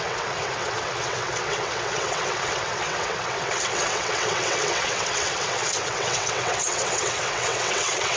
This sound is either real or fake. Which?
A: fake